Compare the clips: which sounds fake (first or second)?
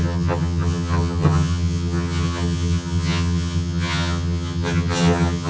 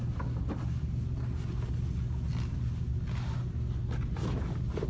first